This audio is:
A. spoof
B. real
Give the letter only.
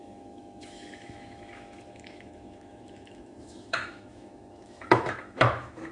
A